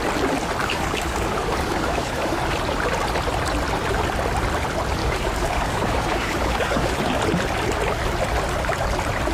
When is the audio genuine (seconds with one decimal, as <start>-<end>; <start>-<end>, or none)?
0.0-0.6; 2.4-5.0; 6.9-9.3